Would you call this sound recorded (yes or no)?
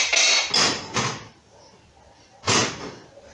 yes